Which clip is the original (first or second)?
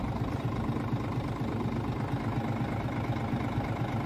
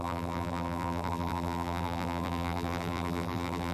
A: first